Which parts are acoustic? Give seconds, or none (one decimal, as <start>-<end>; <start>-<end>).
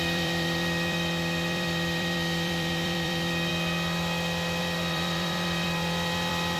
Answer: 3.5-4.6